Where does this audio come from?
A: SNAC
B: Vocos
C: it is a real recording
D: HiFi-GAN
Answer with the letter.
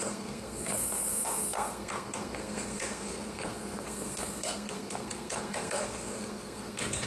A